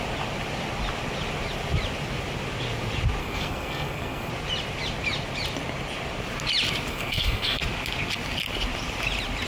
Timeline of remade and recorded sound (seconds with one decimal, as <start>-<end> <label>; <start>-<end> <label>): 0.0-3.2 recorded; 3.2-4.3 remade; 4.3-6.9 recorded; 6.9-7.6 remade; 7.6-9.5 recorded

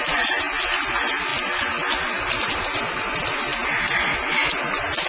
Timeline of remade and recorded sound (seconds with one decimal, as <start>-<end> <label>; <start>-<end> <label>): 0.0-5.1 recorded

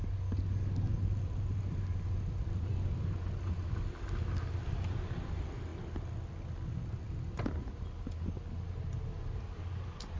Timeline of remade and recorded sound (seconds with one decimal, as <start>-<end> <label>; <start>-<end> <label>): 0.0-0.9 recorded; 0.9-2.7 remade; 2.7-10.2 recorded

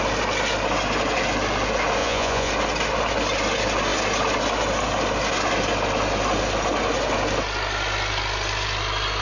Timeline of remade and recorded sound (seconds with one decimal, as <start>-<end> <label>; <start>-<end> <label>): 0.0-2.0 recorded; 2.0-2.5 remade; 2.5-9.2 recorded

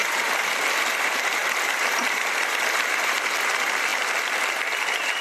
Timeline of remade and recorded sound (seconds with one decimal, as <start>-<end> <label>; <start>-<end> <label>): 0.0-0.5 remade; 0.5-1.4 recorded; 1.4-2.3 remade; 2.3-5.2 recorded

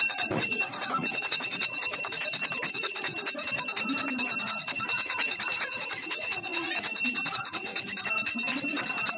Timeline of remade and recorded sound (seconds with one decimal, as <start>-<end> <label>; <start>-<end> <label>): 0.0-1.9 remade; 1.9-2.7 recorded; 2.7-3.1 remade; 3.1-4.4 recorded; 4.4-7.7 remade; 7.7-9.2 recorded

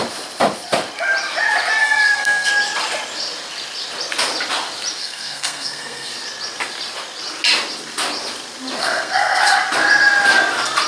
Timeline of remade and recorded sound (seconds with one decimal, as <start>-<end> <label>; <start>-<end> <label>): 0.0-1.8 recorded; 1.8-2.5 remade; 2.5-5.0 recorded; 5.0-6.1 remade; 6.1-8.8 recorded; 8.8-9.4 remade; 9.4-10.9 recorded